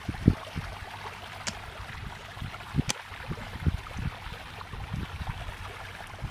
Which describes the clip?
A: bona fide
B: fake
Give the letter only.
A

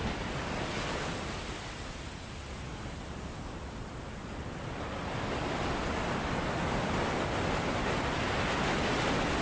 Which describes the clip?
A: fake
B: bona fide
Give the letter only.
B